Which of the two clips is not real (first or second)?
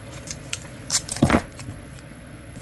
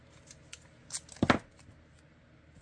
first